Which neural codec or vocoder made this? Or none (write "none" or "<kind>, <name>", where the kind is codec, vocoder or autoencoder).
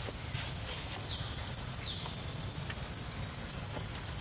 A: none